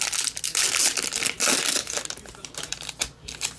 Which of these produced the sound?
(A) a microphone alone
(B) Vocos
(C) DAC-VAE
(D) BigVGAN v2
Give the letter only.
A